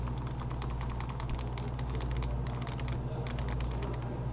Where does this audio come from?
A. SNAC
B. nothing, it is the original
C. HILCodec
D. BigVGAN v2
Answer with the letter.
B